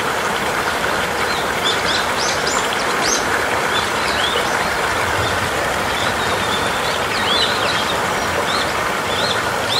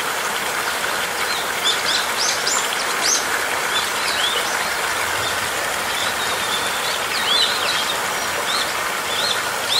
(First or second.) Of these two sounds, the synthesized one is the first